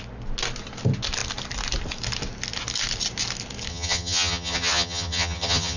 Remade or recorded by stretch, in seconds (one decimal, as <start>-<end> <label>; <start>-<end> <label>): 0.0-3.7 recorded; 3.7-5.8 remade